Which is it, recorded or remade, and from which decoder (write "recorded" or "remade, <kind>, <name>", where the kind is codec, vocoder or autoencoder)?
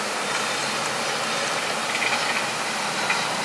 recorded